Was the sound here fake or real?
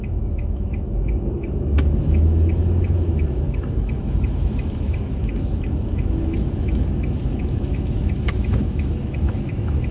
fake